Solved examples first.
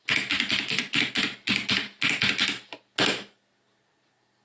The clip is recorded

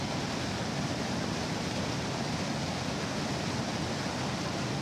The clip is recorded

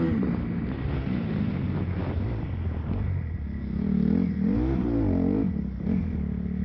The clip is recorded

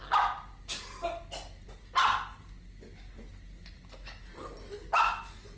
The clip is recorded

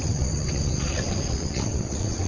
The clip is remade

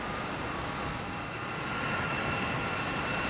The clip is remade